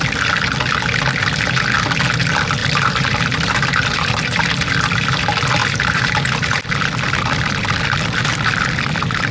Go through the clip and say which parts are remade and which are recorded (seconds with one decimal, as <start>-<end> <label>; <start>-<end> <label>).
0.0-2.6 recorded; 2.6-4.7 remade; 4.7-5.6 recorded; 5.6-6.6 remade; 6.6-9.3 recorded